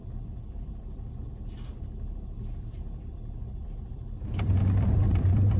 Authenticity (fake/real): fake